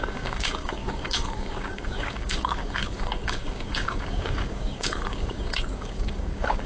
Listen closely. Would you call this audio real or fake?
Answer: fake